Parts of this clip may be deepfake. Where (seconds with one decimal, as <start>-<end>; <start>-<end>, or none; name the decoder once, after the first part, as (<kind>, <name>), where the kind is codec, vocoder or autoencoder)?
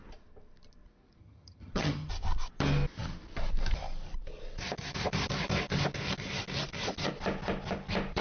1.2-2.1 (vocoder, HiFi-GAN)